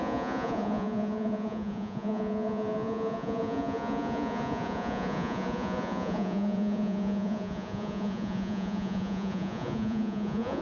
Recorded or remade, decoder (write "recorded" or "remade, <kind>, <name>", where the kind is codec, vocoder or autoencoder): remade, vocoder, Vocos